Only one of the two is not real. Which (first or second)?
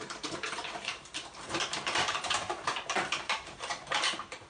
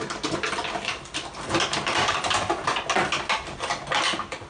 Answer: first